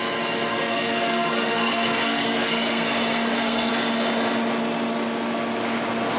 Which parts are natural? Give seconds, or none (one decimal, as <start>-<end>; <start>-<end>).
0.0-0.5; 3.7-6.2